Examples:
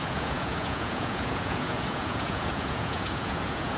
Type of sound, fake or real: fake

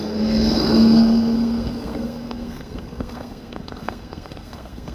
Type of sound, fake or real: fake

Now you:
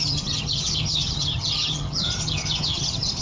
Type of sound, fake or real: fake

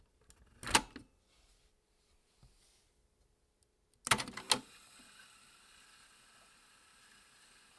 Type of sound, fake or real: real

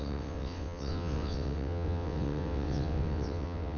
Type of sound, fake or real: fake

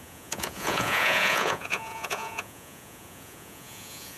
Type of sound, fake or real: fake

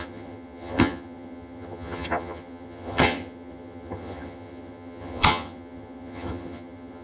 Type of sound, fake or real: fake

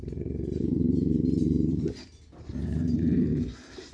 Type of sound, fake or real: fake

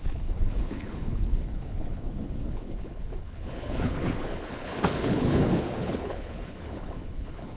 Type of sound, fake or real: fake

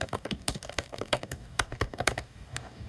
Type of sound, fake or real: fake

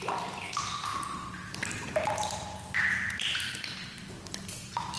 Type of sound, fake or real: real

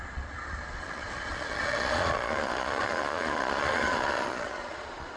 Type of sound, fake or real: fake